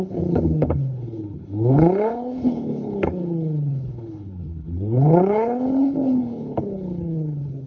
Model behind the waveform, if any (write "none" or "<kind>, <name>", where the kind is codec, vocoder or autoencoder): codec, HILCodec